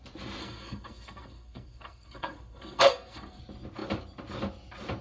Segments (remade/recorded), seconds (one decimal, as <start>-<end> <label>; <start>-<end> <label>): 0.0-0.4 recorded; 0.4-3.4 remade; 3.4-5.0 recorded